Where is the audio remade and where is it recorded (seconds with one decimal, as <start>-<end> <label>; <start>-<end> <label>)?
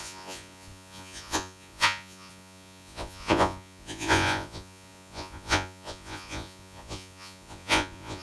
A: 0.0-8.2 remade